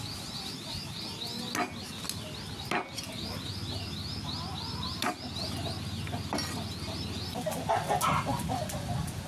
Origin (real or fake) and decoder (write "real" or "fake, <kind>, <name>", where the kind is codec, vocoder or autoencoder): real